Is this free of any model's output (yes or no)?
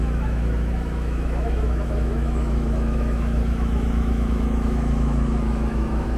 no